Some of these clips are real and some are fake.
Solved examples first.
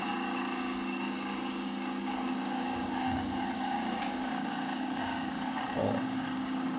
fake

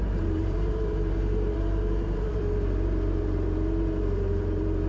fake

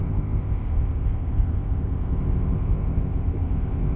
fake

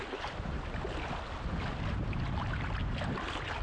real